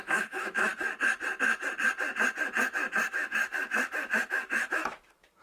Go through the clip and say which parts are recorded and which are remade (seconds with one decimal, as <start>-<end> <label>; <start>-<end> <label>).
0.0-0.7 remade; 0.7-3.1 recorded; 3.1-5.4 remade